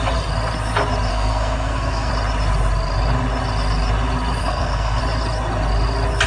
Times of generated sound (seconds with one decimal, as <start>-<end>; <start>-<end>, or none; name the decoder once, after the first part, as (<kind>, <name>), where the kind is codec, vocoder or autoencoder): 1.1-2.1 (codec, SNAC); 4.4-5.0

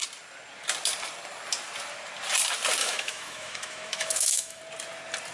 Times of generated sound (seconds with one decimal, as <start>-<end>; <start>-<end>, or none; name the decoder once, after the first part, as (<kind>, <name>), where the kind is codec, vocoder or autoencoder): 2.8-4.6 (autoencoder, DAC-VAE)

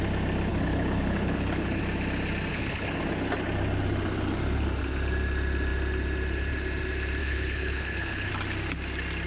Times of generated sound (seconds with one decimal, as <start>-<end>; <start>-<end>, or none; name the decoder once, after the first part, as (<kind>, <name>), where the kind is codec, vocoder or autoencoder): 0.5-1.8 (codec, HILCodec); 2.5-3.0; 7.2-8.3